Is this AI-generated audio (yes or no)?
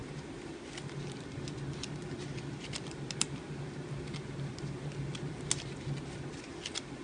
no